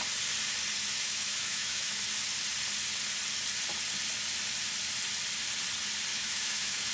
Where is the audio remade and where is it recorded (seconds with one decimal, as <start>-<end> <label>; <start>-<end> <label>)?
0.0-0.9 recorded; 0.9-2.0 remade; 2.0-6.1 recorded; 6.1-6.9 remade